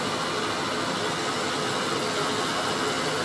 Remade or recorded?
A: recorded